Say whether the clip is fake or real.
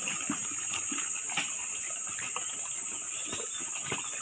real